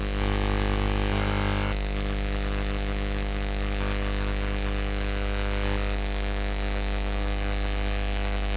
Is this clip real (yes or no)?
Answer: no